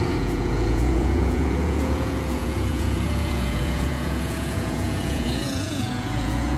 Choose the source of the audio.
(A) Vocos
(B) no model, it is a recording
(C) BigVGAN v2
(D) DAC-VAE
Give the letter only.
A